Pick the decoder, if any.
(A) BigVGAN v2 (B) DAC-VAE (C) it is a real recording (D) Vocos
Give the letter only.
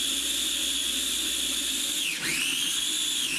C